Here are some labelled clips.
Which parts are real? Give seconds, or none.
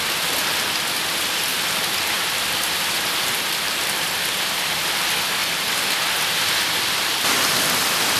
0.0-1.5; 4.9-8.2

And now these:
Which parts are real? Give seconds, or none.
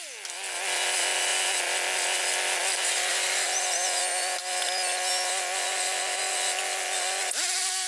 0.0-7.9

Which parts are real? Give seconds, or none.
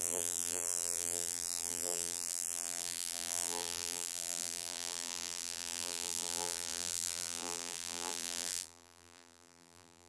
none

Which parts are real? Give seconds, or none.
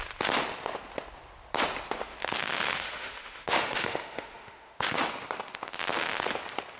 0.0-2.0; 5.0-6.8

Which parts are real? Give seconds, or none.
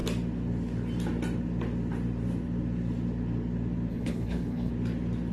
0.0-3.9; 4.7-5.3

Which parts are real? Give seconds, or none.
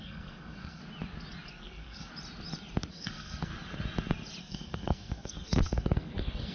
0.8-1.5; 2.1-2.9; 3.5-4.4